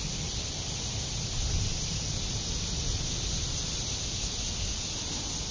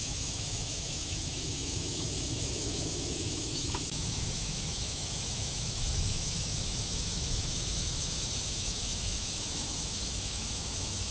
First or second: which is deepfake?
second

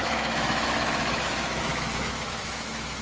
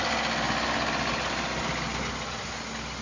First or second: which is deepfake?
first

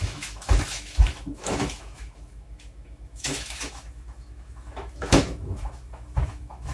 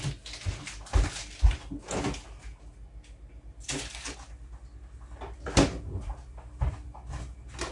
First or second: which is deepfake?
first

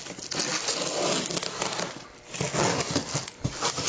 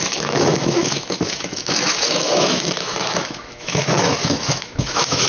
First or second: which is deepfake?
second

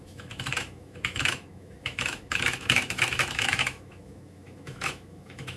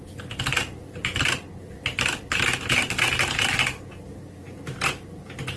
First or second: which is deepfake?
first